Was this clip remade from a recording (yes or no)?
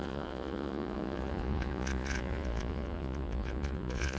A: yes